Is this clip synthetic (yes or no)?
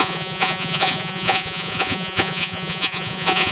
yes